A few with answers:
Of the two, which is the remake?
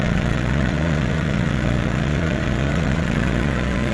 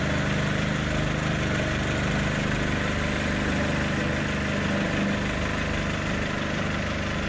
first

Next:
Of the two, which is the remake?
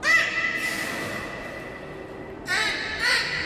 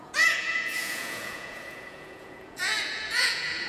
second